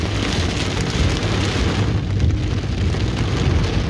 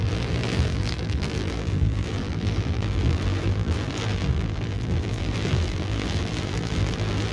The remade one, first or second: second